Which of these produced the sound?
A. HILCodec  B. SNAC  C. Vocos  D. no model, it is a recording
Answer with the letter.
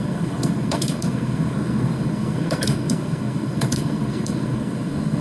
B